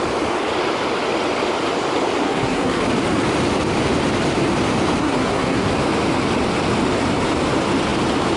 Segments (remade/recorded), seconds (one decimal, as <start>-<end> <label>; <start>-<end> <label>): 0.0-2.2 recorded; 2.2-2.8 remade; 2.8-5.0 recorded; 5.0-5.7 remade; 5.7-8.4 recorded